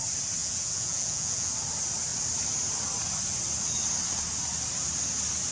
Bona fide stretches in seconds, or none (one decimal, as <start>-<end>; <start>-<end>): 0.0-0.4; 1.5-5.5